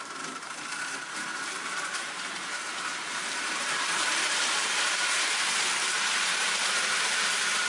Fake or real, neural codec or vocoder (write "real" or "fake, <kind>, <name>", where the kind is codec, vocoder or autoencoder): fake, vocoder, BigVGAN v2